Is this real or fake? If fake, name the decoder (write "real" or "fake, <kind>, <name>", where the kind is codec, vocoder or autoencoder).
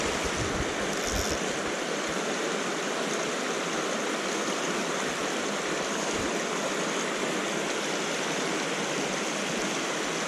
real